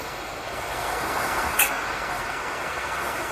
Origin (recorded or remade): remade